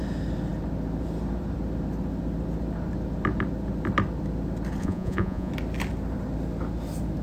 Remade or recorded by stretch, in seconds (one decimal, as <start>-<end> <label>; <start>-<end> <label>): 0.0-4.8 recorded; 4.8-5.5 remade; 5.5-7.2 recorded